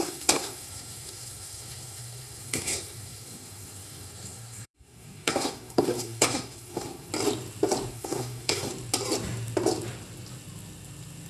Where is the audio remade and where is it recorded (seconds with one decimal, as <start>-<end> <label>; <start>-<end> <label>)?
0.0-7.1 remade; 7.1-7.9 recorded; 7.9-8.7 remade; 8.7-11.3 recorded